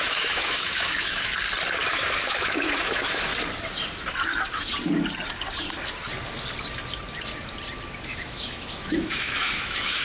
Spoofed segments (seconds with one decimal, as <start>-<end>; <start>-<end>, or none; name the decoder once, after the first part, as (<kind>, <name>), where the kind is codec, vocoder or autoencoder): 0.0-1.3 (autoencoder, DAC-VAE); 1.9-3.3; 8.1-10.0